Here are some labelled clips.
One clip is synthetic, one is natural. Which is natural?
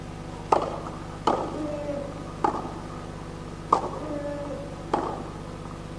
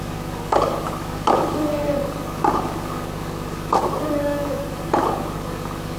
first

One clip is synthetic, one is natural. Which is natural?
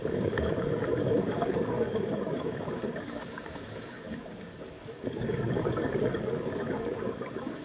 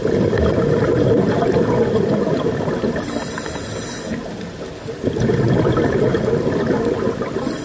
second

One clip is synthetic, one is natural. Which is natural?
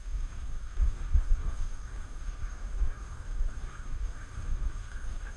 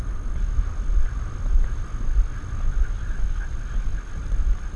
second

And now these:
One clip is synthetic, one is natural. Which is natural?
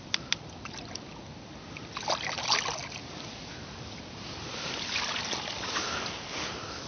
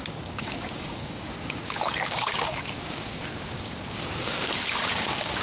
first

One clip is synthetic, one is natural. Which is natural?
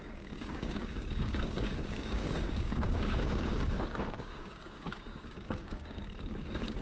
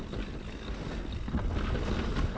second